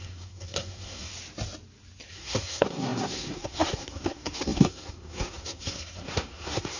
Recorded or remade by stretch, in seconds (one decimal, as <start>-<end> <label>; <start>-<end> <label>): 0.0-1.1 remade; 1.1-2.1 recorded; 2.1-6.8 remade